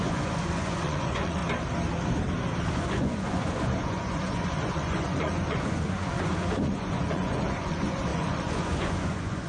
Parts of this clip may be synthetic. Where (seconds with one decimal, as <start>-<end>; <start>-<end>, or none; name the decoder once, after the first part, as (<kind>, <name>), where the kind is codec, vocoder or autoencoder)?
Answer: 0.0-1.4 (vocoder, Vocos); 2.7-9.5